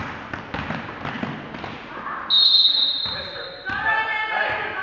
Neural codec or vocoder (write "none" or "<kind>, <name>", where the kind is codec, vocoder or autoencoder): none